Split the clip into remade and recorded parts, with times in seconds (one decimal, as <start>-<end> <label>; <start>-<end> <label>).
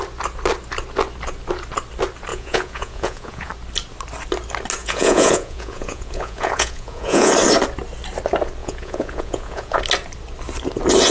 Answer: 0.0-2.3 recorded; 2.3-3.5 remade; 3.5-4.8 recorded; 4.8-7.3 remade; 7.3-8.6 recorded; 8.6-9.8 remade; 9.8-11.1 recorded